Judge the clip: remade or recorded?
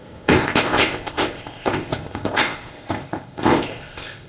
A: remade